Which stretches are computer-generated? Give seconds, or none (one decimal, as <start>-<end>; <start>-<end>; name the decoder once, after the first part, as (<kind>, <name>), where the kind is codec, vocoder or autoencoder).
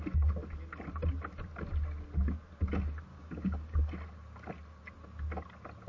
3.1-3.8 (codec, DAC)